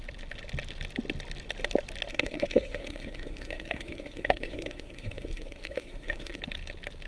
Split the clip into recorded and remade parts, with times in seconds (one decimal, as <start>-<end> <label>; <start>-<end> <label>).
0.0-2.1 recorded; 2.1-6.4 remade; 6.4-7.1 recorded